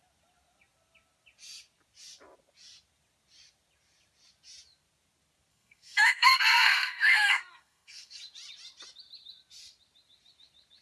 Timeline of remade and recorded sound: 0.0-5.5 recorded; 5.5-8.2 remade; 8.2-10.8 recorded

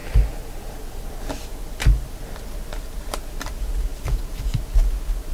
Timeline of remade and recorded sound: 0.0-5.3 recorded

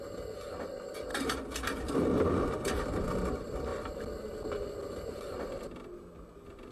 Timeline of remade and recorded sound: 0.0-1.1 recorded; 1.1-2.7 remade; 2.7-3.7 recorded; 3.7-5.7 remade; 5.7-6.7 recorded

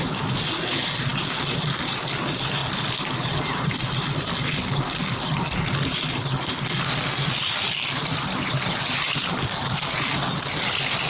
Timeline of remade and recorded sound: 0.0-11.1 recorded

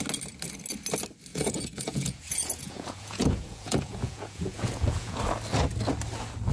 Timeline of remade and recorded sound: 0.0-1.3 recorded; 1.3-5.2 remade; 5.2-6.5 recorded

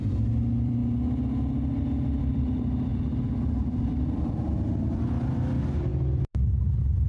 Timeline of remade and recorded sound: 0.0-0.8 remade; 0.8-2.2 recorded; 2.2-2.9 remade; 2.9-3.4 recorded; 3.4-7.1 remade

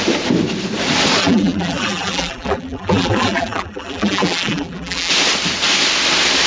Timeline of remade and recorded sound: 0.0-1.2 recorded; 1.2-5.1 remade; 5.1-6.5 recorded

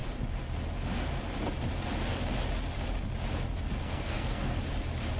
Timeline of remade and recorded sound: 0.0-3.8 recorded; 3.8-4.6 remade; 4.6-5.2 recorded